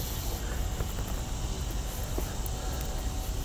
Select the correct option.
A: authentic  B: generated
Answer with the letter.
A